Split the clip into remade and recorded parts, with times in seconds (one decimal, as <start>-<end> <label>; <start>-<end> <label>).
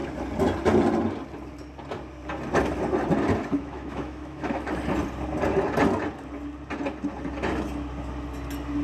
0.0-3.5 recorded; 3.5-4.7 remade; 4.7-8.8 recorded